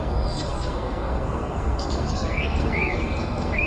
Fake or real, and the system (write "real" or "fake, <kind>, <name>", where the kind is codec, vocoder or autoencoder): fake, codec, SNAC